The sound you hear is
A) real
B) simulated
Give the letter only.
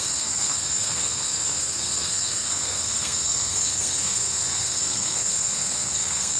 B